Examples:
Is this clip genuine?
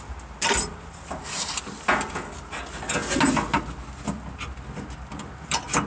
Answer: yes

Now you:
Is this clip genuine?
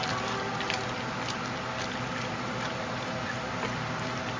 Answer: yes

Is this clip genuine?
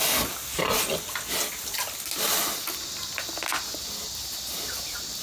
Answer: yes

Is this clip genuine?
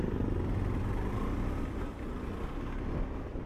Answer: yes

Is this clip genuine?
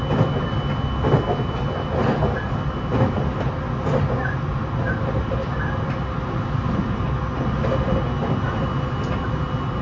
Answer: yes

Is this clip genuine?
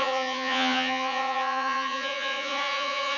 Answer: no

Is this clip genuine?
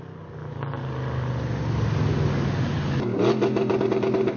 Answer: yes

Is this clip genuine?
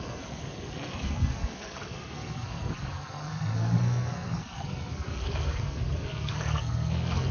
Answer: no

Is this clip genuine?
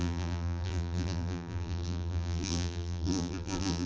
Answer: no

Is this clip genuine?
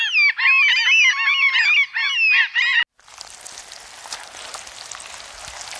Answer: yes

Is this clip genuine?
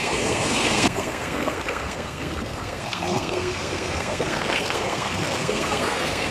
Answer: no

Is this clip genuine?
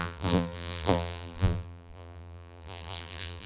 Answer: no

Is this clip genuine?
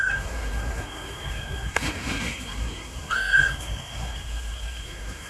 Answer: no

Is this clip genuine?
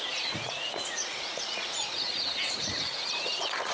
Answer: no